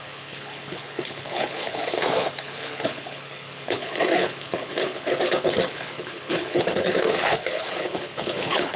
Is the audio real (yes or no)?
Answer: no